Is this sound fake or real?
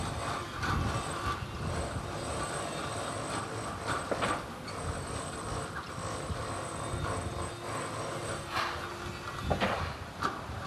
real